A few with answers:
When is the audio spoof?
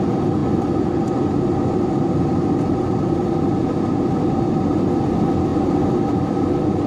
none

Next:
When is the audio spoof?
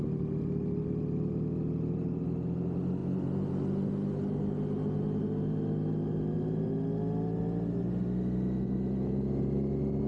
none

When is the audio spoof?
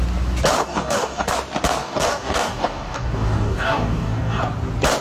0.6-1.3; 1.8-4.4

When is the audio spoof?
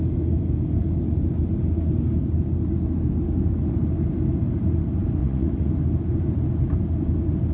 5.2-5.7